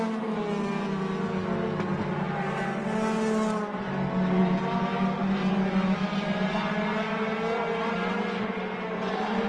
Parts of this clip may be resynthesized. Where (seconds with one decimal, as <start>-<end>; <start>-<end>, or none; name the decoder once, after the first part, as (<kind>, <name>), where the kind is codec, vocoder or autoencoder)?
none